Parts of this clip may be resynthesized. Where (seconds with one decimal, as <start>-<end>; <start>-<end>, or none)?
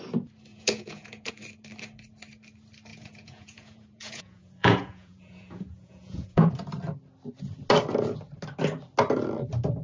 0.5-1.3; 2.9-6.5